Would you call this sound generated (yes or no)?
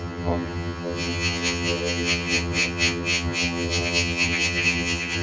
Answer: yes